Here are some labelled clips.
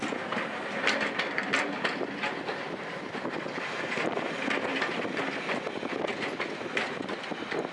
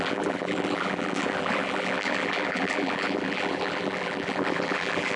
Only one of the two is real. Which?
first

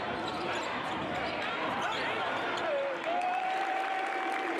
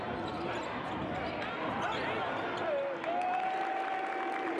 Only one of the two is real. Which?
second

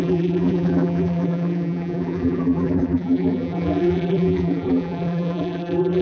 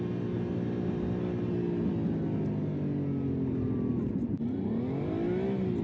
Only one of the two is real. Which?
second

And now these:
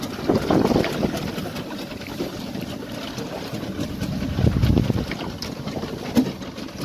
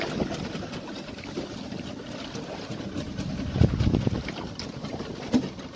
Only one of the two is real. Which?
first